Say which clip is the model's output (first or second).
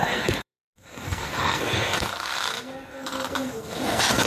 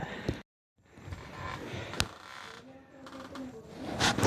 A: first